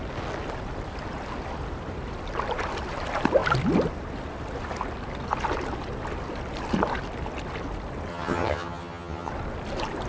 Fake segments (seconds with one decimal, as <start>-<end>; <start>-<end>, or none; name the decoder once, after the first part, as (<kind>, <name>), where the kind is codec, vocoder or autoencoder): 8.1-9.3 (vocoder, HiFi-GAN)